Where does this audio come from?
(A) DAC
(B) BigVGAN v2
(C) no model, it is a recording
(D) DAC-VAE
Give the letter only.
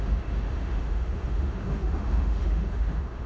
D